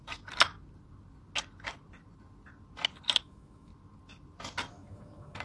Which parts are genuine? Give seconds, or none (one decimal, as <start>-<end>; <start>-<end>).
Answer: 0.0-3.2; 3.7-4.7